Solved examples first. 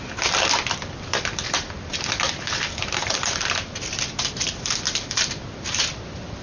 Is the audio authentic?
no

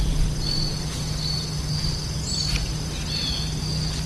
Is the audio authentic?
yes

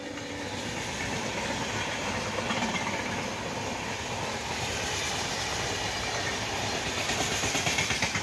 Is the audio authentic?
yes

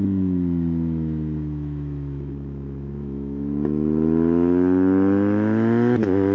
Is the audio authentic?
no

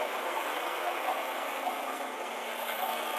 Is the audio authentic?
no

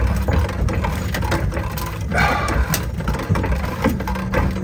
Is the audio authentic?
yes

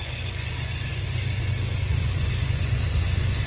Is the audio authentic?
no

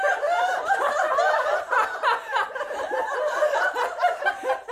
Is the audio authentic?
yes